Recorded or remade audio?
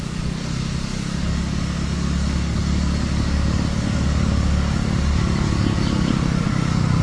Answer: remade